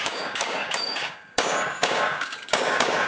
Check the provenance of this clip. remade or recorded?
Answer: remade